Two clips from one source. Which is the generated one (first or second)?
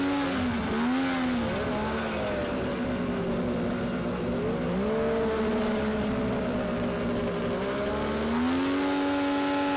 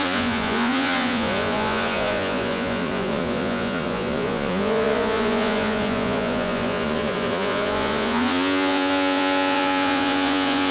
second